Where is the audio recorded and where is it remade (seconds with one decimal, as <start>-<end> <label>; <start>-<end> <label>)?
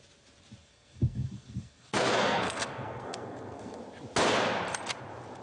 0.0-0.6 recorded; 0.6-3.8 remade; 3.8-5.4 recorded